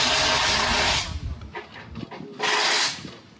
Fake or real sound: real